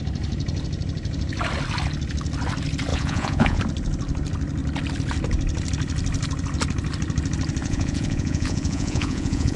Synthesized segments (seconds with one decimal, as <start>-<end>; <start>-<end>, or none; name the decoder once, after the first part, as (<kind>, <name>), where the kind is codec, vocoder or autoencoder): 2.9-3.6 (vocoder, Vocos); 7.6-9.6